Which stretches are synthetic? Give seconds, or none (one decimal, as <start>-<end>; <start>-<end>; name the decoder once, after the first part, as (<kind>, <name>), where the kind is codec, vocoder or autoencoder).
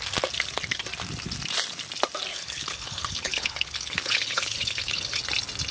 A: 2.3-5.2 (codec, HILCodec)